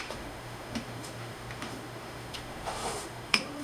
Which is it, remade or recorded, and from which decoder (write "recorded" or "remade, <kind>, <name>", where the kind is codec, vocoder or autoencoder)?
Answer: remade, autoencoder, DAC-VAE